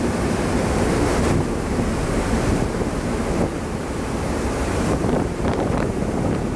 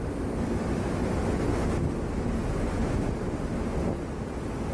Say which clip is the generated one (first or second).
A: first